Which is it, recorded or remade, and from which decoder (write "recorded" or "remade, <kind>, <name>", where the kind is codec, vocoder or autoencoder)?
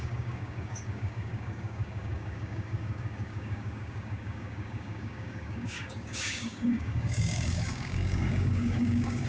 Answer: remade, codec, DAC